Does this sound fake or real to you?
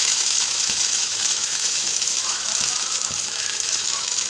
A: fake